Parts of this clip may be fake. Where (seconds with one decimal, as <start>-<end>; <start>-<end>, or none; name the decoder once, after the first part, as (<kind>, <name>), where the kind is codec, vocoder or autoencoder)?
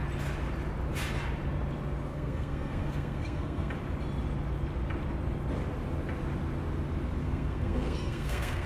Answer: 2.1-3.7 (codec, SNAC); 7.2-8.7